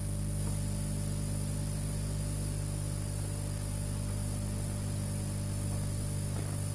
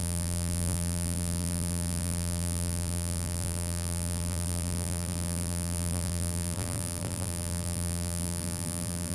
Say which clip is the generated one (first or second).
second